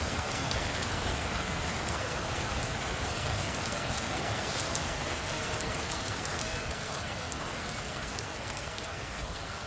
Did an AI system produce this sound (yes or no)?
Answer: yes